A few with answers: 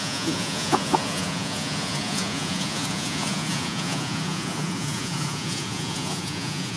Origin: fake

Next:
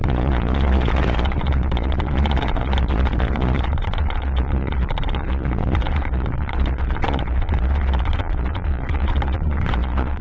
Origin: fake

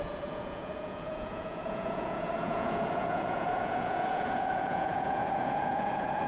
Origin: fake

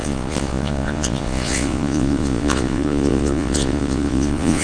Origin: fake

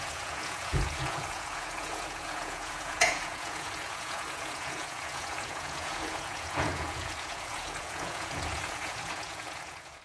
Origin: fake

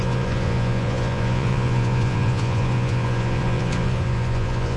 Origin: fake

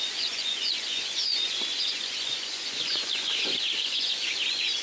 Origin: fake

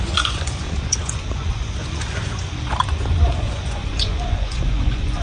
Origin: fake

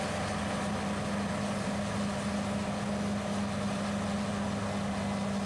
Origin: real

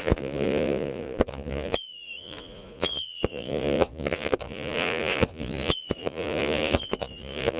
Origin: fake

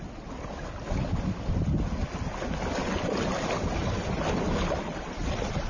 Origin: real